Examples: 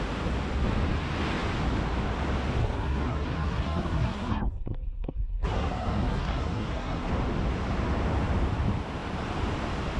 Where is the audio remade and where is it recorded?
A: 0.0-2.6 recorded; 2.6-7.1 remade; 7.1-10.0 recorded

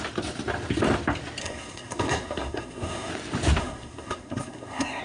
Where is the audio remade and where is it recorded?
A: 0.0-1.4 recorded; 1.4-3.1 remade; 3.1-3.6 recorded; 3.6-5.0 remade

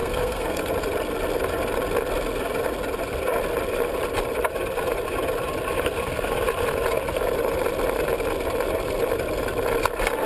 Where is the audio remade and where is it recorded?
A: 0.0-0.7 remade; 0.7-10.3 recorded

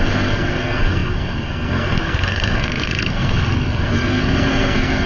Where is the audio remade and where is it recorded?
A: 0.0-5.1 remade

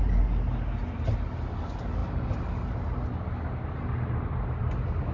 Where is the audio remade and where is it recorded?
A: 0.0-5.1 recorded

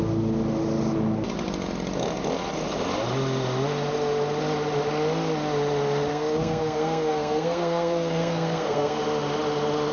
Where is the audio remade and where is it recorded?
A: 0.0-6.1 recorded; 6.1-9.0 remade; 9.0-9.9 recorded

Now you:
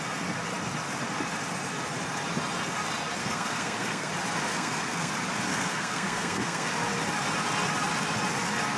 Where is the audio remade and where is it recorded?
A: 0.0-3.2 recorded; 3.2-4.1 remade; 4.1-4.5 recorded; 4.5-5.1 remade; 5.1-5.5 recorded; 5.5-6.7 remade; 6.7-8.8 recorded